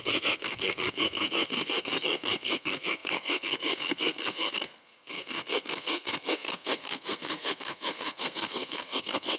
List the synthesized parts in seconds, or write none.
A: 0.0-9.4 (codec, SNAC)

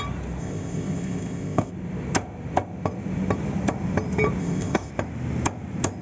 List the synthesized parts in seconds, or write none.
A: 0.4-1.7 (codec, ZipCodec); 4.4-4.9

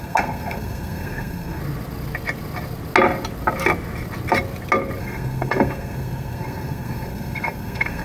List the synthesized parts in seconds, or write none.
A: 0.0-1.6 (codec, SNAC); 5.0-8.0